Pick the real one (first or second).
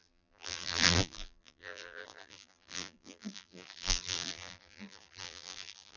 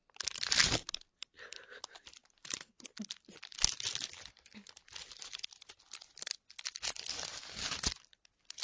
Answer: second